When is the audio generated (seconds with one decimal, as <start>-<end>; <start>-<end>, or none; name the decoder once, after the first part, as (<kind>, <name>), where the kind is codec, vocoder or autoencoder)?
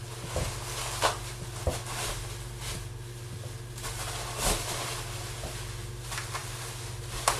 none